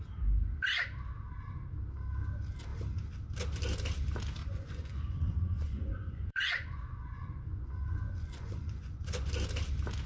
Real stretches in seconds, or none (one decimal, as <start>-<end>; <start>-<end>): 0.0-4.4; 9.3-10.1